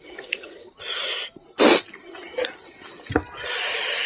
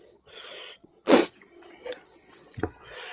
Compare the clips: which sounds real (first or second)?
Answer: first